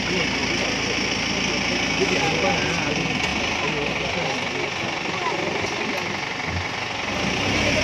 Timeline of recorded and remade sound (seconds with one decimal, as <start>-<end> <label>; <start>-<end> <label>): 0.0-7.8 recorded